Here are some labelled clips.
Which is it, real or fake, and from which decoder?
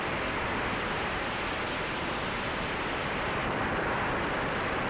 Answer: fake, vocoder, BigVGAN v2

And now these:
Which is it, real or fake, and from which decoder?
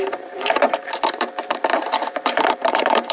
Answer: fake, vocoder, BigVGAN v2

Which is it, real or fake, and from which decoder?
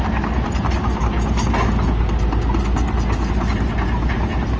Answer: real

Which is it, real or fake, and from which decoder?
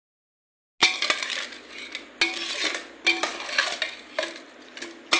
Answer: real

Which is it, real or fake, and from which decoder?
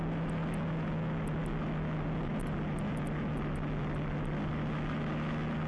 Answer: real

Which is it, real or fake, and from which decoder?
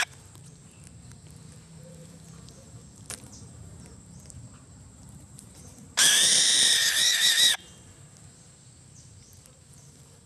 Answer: fake, vocoder, BigVGAN v2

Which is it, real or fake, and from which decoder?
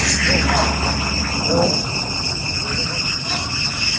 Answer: real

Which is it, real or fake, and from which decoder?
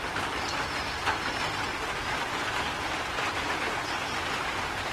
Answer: real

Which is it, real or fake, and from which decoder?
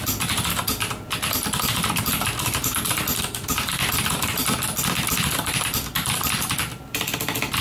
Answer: fake, vocoder, BigVGAN v2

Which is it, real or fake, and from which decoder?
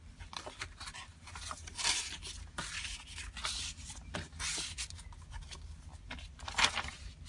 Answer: real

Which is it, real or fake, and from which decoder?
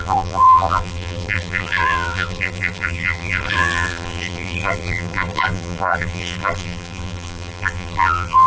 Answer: fake, vocoder, BigVGAN v2